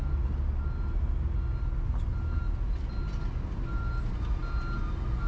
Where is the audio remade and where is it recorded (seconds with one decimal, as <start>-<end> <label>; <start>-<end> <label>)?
0.0-5.3 recorded